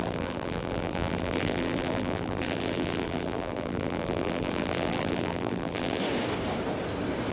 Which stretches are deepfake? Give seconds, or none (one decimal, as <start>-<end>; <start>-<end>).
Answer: 0.0-6.0